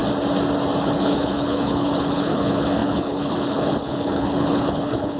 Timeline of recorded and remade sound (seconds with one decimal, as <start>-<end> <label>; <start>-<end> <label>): 0.0-0.8 recorded; 0.8-5.2 remade